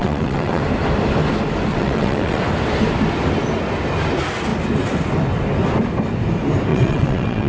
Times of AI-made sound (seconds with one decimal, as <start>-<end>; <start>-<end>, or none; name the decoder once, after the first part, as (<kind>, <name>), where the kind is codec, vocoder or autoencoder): 0.0-0.6 (vocoder, WaveNeXt); 1.7-2.4; 6.7-7.5